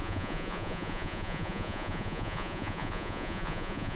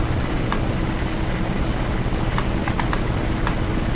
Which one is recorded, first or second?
second